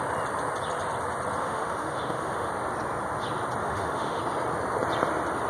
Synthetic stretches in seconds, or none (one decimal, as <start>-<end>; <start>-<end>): 1.4-2.5; 3.6-4.2